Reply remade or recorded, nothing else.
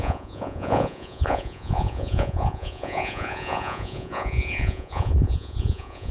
remade